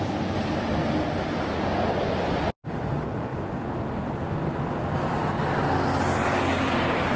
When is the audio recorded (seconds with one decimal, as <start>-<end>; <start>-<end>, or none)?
0.0-7.2